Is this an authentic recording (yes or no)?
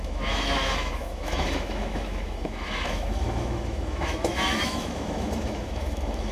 no